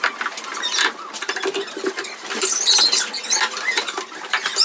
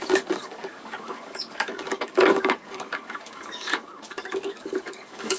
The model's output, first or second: second